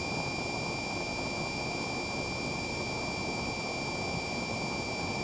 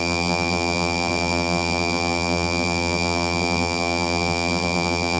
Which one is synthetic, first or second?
second